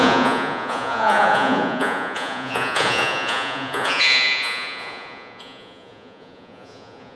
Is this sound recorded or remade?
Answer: remade